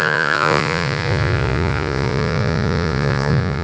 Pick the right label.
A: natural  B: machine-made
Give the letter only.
B